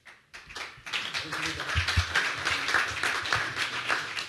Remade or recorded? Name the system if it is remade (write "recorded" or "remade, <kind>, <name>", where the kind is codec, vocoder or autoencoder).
recorded